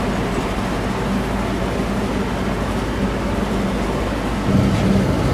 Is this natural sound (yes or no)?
yes